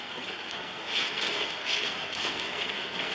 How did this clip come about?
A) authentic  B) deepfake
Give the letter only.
B